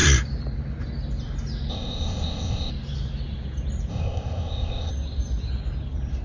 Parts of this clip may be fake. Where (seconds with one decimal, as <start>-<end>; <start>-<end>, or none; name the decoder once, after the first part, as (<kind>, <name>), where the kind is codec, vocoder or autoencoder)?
1.7-2.7 (codec, ZipCodec); 3.9-4.9